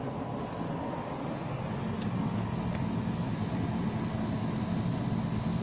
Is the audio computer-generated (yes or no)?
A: no